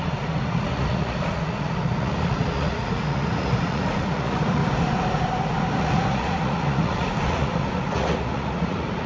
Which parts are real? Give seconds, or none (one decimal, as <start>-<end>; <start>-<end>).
4.6-5.8